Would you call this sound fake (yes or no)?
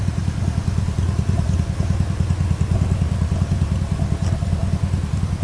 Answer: no